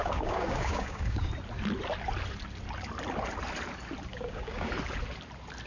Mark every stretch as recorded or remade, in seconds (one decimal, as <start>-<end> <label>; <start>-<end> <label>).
0.0-1.3 remade; 1.3-4.1 recorded; 4.1-4.7 remade; 4.7-5.7 recorded